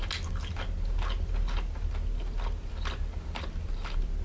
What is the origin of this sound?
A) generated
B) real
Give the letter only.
B